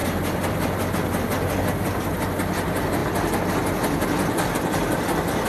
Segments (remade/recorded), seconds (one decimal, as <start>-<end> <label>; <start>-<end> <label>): 0.0-5.5 recorded